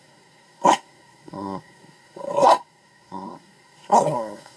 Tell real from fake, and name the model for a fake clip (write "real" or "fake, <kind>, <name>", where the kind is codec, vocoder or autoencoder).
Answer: fake, codec, SNAC